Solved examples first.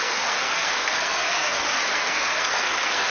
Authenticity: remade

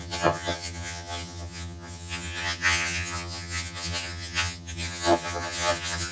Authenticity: remade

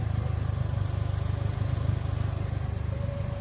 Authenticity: recorded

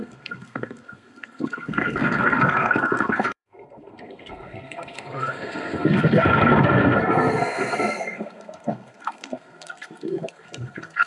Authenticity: remade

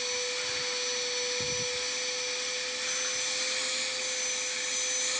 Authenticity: recorded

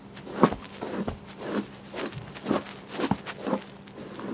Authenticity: recorded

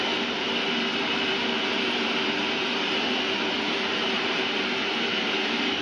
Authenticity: remade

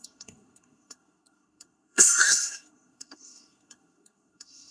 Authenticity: remade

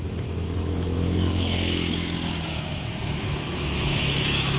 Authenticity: remade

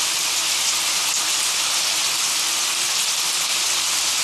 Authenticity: recorded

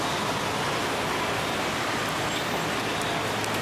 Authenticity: recorded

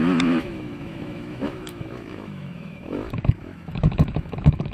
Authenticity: remade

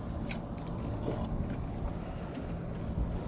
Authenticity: recorded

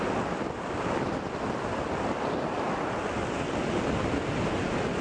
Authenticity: recorded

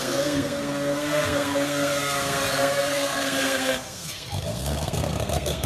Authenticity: remade